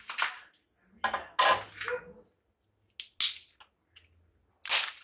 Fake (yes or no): no